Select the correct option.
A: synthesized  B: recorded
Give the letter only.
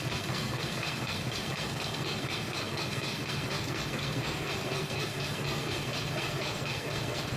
A